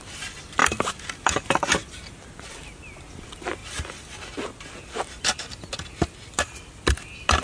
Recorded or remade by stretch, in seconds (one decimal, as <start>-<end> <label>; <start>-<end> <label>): 0.0-7.4 recorded